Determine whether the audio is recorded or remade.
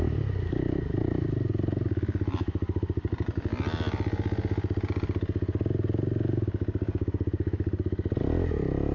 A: recorded